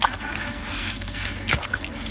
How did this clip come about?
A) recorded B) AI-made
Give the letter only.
B